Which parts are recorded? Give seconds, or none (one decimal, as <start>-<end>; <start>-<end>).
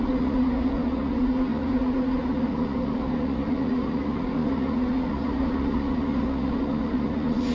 none